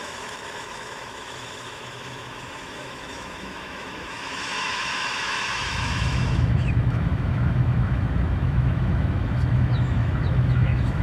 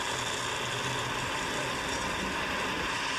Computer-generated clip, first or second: first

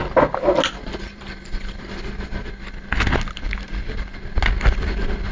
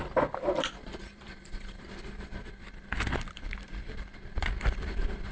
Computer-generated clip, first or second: second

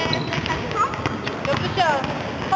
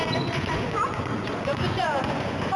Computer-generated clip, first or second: second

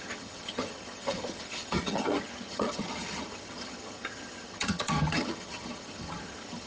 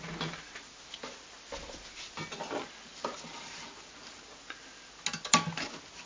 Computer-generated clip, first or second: first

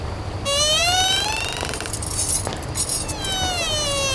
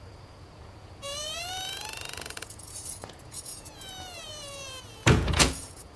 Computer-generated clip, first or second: second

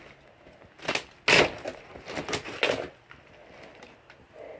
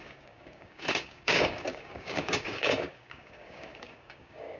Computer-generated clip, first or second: second